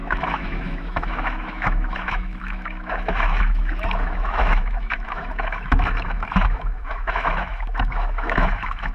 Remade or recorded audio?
remade